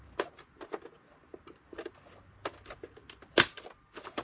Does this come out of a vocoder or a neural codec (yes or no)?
no